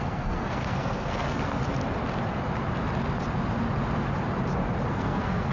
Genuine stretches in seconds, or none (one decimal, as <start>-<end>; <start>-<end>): 1.6-4.9